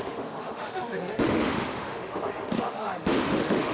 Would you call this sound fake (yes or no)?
yes